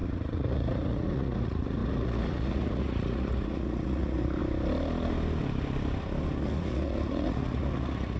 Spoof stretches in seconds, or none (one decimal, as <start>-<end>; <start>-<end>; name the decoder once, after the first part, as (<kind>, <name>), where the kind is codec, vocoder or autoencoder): 0.0-4.4 (vocoder, Vocos); 6.4-8.2